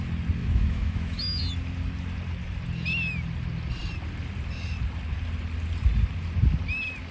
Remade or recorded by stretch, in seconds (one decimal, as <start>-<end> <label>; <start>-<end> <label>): 0.0-0.4 recorded; 0.4-1.4 remade; 1.4-7.1 recorded